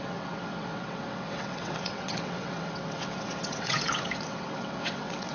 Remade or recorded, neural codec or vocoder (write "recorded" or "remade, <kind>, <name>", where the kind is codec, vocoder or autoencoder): remade, vocoder, WaveNeXt